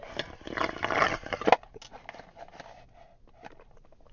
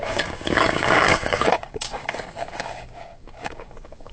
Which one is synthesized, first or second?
second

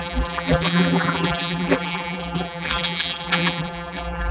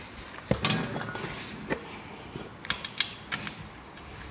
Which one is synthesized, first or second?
first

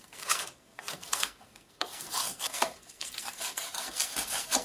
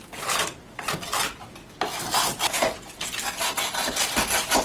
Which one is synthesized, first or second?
first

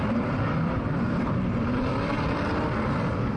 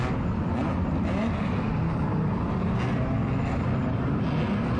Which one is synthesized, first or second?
first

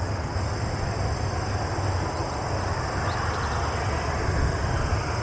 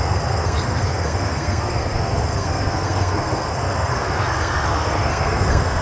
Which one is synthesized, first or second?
second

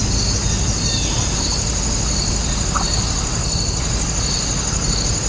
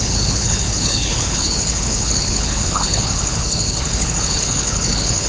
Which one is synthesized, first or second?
second